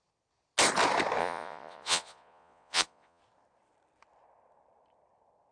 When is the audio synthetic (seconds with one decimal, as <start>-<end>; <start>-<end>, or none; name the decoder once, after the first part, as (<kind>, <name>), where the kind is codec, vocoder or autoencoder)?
1.2-3.2 (vocoder, Vocos)